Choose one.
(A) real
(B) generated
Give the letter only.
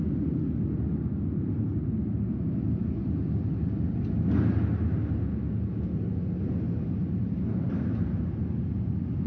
A